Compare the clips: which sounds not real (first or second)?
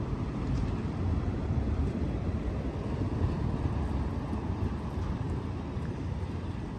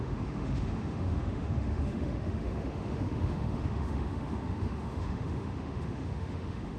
second